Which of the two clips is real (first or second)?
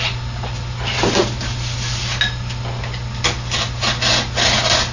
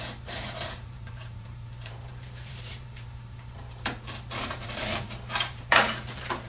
first